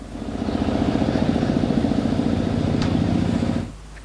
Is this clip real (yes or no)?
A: yes